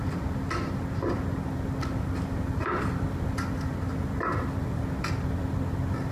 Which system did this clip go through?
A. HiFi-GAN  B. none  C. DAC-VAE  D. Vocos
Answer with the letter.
B